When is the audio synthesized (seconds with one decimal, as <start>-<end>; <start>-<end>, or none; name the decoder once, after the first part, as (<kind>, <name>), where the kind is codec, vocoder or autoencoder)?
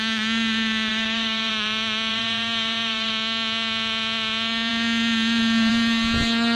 0.9-1.5 (vocoder, BigVGAN v2); 2.1-3.1